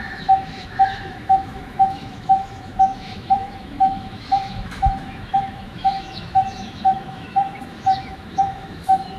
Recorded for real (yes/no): no